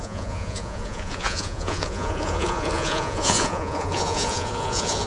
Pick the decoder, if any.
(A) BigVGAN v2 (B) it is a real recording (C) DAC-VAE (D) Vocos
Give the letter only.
D